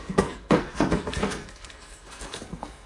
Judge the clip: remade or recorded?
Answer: remade